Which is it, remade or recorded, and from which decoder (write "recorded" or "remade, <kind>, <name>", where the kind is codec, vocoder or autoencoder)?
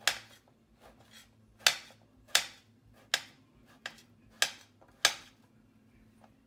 recorded